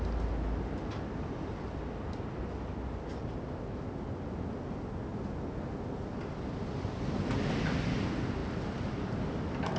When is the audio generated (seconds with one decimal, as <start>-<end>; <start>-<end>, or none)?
none